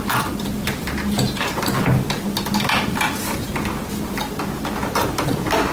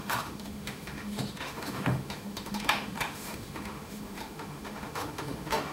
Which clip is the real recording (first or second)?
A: first